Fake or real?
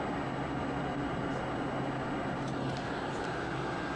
real